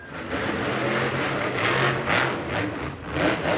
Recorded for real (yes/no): yes